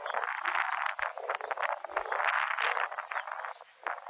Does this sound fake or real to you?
real